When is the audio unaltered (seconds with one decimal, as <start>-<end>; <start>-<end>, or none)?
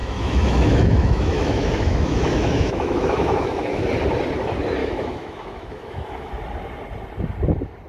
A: 3.9-4.8; 6.3-7.9